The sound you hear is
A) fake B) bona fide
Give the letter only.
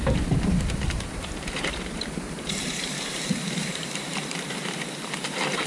A